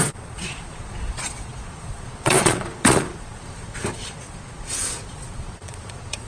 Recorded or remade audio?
remade